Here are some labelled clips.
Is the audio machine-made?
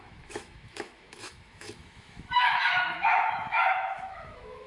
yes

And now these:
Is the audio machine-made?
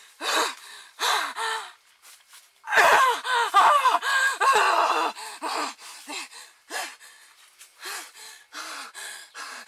no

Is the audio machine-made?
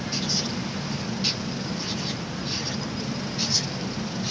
no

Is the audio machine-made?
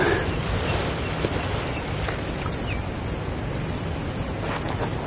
no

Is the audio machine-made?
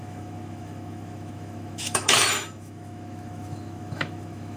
yes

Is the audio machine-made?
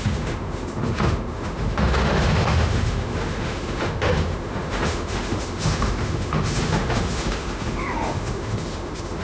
yes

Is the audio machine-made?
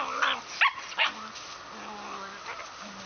no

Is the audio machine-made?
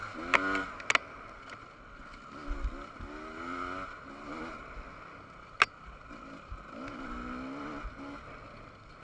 no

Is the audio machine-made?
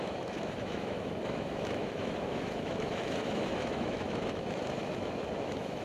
yes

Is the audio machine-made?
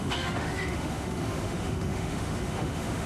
yes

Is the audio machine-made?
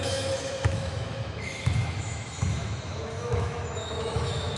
yes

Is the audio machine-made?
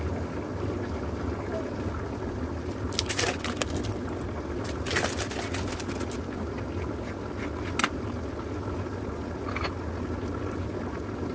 no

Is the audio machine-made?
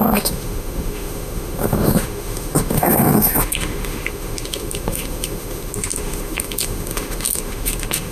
yes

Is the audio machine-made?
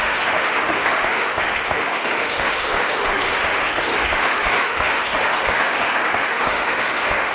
yes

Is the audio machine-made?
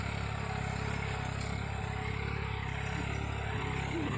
no